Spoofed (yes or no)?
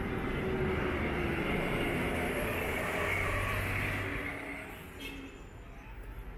no